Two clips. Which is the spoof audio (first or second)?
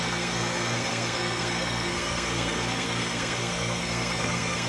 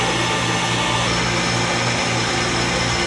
first